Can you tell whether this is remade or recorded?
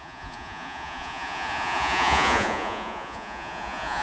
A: remade